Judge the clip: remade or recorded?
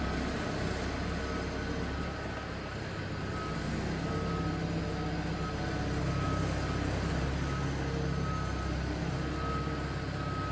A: recorded